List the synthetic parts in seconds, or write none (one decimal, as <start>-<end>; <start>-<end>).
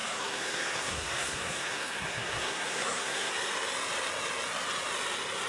0.0-3.3